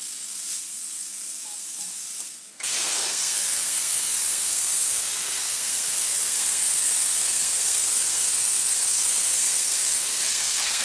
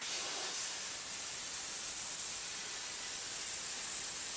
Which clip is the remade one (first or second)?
first